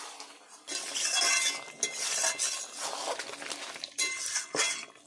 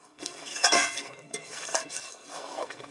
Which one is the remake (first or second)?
second